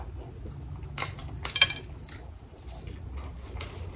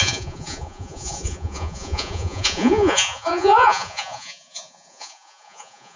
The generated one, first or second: second